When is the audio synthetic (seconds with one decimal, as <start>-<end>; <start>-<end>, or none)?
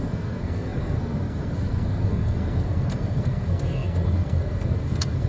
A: 0.0-5.3